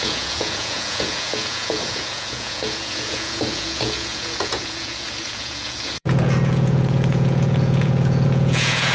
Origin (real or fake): fake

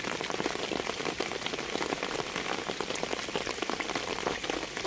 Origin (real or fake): fake